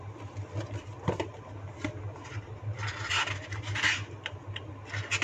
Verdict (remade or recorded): recorded